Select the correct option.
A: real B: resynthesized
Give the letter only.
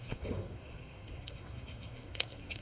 B